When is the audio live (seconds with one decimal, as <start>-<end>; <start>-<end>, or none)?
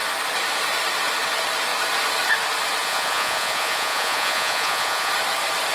0.0-2.8; 5.1-5.7